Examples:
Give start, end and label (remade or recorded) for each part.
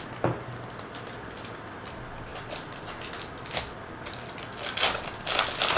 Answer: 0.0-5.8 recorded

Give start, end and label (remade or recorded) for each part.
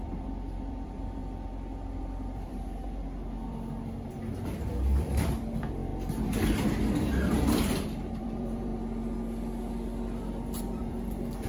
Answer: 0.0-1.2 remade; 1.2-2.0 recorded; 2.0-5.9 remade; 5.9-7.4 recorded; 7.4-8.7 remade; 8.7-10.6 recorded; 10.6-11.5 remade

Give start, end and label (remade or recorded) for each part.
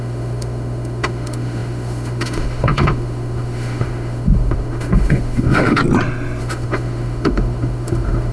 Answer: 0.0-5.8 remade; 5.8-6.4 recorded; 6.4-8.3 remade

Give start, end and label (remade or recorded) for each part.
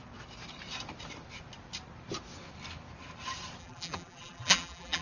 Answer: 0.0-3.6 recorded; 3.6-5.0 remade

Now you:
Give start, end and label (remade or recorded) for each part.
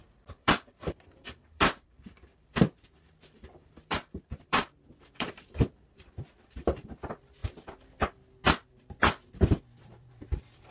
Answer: 0.0-7.4 remade; 7.4-9.6 recorded; 9.6-10.7 remade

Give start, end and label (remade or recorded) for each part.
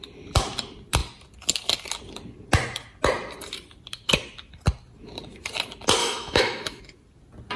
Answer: 0.0-6.0 recorded; 6.0-6.8 remade; 6.8-7.6 recorded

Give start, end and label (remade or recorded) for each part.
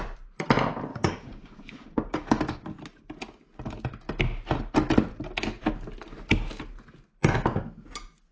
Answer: 0.0-0.9 recorded; 0.9-2.4 remade; 2.4-8.3 recorded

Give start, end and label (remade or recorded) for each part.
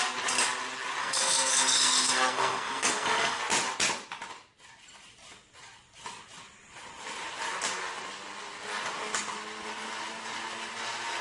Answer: 0.0-1.0 recorded; 1.0-3.4 remade; 3.4-11.2 recorded